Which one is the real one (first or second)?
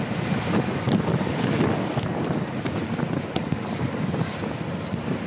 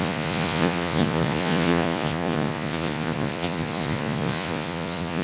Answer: first